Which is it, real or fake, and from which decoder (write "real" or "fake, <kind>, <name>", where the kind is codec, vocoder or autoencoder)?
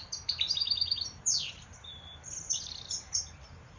fake, vocoder, BigVGAN v2